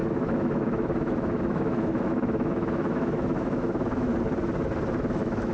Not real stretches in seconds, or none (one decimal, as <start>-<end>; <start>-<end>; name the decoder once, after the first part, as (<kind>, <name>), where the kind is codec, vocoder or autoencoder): 0.0-4.1 (autoencoder, DAC-VAE); 5.0-5.5